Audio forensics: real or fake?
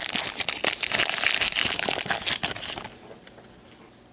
real